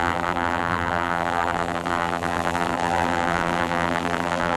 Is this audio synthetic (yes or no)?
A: yes